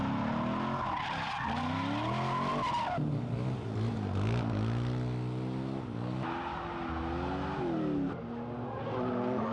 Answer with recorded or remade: recorded